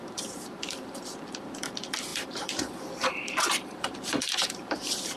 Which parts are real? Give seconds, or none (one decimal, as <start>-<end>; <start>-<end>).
none